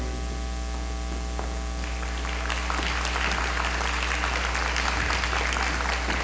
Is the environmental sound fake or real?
real